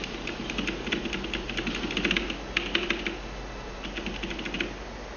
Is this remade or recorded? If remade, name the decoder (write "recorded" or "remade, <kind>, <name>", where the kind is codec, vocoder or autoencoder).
recorded